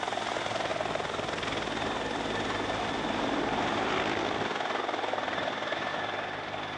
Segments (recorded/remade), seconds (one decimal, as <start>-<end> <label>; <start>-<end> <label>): 0.0-6.8 recorded

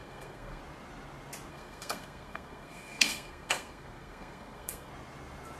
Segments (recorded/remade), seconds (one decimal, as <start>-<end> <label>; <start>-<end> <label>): 0.0-0.6 remade; 0.6-1.5 recorded; 1.5-4.9 remade; 4.9-5.6 recorded